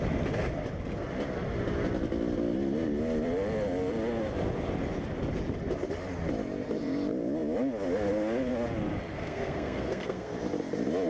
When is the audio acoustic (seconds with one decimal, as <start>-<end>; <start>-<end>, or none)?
0.0-9.1; 10.3-11.1